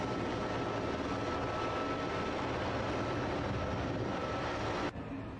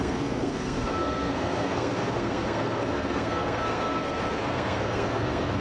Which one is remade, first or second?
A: second